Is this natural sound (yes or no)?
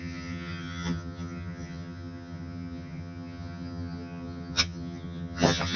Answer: no